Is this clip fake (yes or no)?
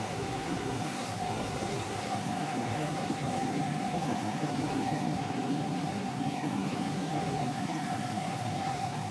yes